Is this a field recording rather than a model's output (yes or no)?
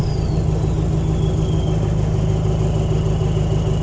yes